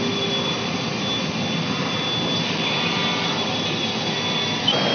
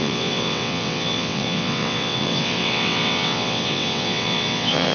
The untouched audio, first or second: first